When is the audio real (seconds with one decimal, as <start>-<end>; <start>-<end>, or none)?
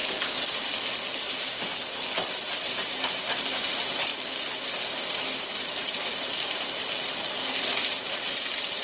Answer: 0.0-2.3; 4.1-5.4